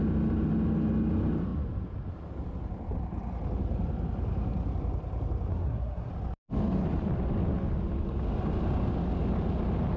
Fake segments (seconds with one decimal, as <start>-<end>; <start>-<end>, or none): 5.5-6.1